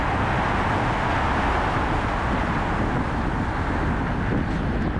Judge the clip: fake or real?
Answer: real